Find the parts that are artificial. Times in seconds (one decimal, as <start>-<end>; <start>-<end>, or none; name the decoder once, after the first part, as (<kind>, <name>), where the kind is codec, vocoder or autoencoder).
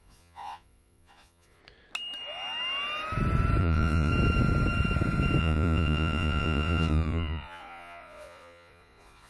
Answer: 0.0-1.6 (vocoder, Vocos); 3.6-4.1; 5.4-9.3